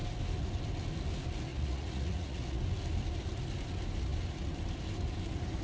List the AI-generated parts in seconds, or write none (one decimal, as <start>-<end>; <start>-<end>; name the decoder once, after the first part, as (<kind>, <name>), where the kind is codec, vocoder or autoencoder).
1.5-2.6 (vocoder, Vocos)